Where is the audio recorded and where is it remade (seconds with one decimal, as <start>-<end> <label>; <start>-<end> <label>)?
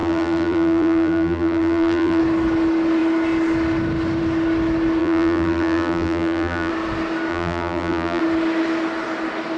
0.0-2.2 remade; 2.2-5.0 recorded; 5.0-6.7 remade; 6.7-7.3 recorded; 7.3-8.2 remade; 8.2-9.6 recorded